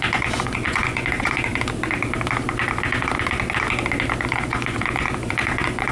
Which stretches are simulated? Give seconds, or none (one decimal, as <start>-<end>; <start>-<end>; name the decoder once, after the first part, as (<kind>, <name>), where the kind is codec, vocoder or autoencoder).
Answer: 0.0-1.5 (vocoder, Vocos); 4.2-5.9